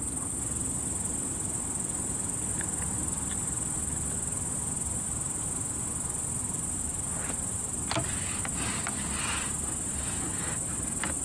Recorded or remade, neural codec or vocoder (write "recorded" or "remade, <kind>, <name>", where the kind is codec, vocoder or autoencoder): recorded